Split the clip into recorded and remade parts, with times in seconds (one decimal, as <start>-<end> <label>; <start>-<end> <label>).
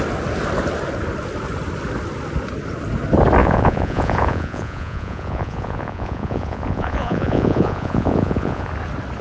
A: 0.0-3.4 recorded; 3.4-8.7 remade; 8.7-9.2 recorded